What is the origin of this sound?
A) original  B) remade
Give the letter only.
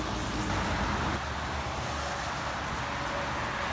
A